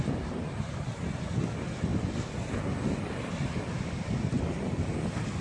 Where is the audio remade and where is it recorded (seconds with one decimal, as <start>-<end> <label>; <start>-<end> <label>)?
0.0-5.4 recorded